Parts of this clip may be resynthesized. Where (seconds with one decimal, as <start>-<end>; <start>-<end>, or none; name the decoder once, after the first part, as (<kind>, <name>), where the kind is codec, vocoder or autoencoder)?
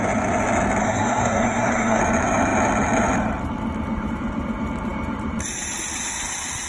0.8-2.0 (codec, SNAC)